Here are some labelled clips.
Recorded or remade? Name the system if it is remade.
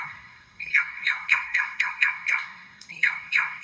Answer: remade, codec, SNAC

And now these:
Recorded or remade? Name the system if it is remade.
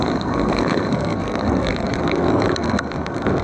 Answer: remade, codec, SNAC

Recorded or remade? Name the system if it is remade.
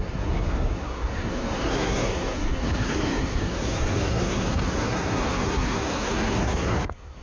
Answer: remade, codec, SNAC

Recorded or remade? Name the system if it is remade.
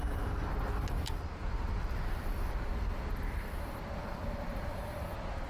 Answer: recorded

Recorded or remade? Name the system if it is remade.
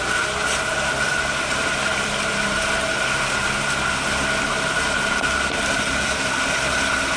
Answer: recorded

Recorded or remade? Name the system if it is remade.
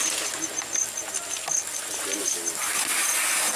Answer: recorded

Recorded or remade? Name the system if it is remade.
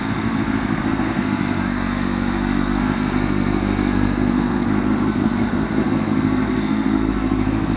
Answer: remade, codec, SNAC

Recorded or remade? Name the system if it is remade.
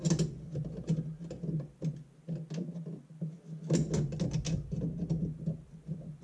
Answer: recorded